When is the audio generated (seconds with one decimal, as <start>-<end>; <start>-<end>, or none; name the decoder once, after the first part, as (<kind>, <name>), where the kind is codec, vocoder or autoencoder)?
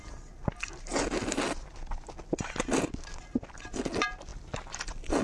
none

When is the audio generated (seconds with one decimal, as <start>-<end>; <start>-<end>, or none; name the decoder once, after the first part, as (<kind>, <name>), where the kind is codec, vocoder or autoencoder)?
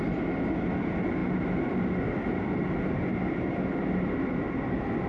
none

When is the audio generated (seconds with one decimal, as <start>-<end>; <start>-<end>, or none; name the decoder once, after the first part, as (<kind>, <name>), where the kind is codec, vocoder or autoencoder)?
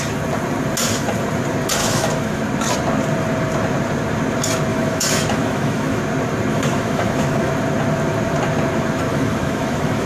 1.8-2.4 (autoencoder, DAC-VAE); 4.7-6.0; 6.5-7.5; 9.1-10.1